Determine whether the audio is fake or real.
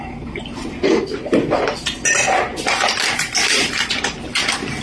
real